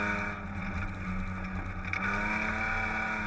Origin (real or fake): real